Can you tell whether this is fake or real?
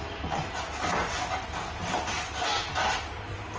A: real